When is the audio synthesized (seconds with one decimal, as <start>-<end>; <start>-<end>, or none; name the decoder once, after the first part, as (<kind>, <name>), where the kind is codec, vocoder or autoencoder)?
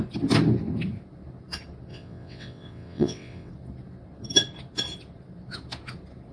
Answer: 1.9-3.5 (vocoder, WaveNeXt)